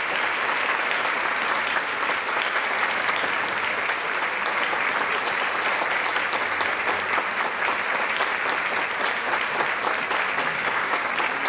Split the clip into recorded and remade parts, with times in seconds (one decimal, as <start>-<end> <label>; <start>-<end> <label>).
0.0-10.5 recorded; 10.5-11.1 remade; 11.1-11.5 recorded